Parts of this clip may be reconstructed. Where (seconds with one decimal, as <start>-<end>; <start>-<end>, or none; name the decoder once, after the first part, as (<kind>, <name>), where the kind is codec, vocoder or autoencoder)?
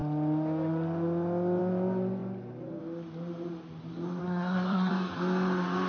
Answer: 4.2-4.9 (codec, SNAC)